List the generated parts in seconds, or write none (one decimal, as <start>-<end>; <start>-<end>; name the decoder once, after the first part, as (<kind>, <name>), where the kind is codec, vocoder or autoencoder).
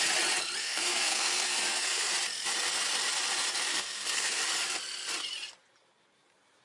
0.6-2.1 (codec, SNAC); 3.7-4.4